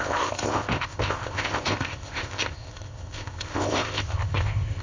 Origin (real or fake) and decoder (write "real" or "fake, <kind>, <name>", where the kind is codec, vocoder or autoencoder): fake, codec, ZipCodec